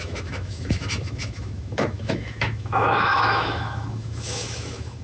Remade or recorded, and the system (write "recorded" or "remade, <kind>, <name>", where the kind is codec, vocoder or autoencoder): remade, autoencoder, DAC-VAE